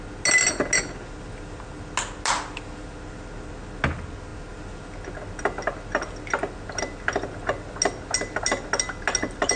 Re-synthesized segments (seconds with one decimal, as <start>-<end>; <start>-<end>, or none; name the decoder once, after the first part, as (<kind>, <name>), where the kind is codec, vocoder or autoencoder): none